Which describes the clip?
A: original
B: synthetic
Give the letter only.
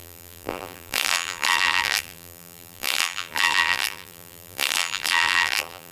B